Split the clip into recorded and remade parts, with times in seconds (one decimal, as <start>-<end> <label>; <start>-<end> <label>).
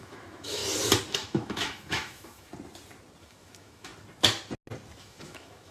0.0-0.6 remade; 0.6-1.1 recorded; 1.1-2.5 remade; 2.5-3.2 recorded; 3.2-3.9 remade; 3.9-5.0 recorded; 5.0-5.7 remade